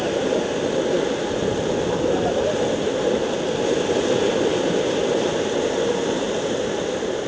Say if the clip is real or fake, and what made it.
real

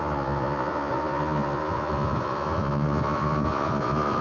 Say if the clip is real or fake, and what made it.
fake, vocoder, Vocos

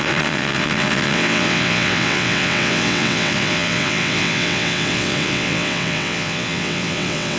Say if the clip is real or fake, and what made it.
fake, vocoder, WaveNeXt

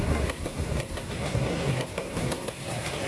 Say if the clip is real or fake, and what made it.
fake, codec, SNAC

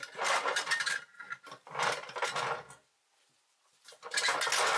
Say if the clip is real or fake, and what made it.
real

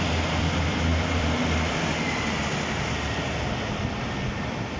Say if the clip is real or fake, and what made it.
fake, vocoder, BigVGAN v2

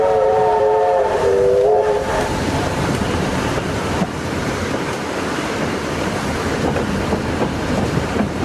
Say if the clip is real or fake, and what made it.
fake, vocoder, BigVGAN v2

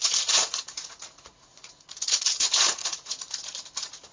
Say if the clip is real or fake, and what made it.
fake, vocoder, Vocos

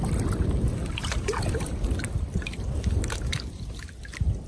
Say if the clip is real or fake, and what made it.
real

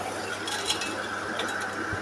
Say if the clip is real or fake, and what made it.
real